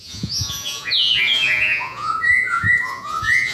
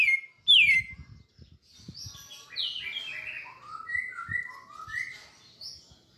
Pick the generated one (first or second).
first